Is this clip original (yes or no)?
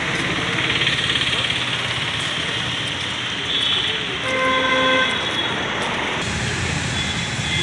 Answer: yes